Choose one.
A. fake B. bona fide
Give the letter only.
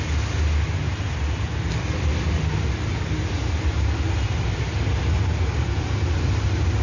B